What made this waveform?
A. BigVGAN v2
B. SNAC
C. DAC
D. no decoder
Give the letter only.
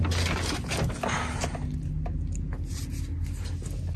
D